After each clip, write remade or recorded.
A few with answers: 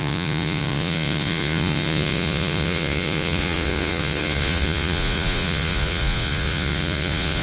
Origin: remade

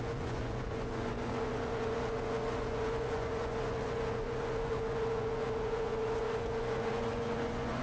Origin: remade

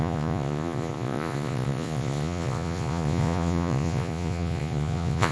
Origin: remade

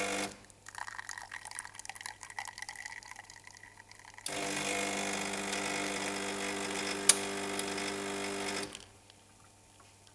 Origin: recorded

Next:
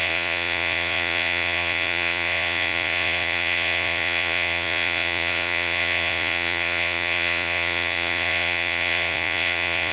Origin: remade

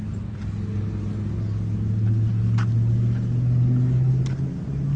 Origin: recorded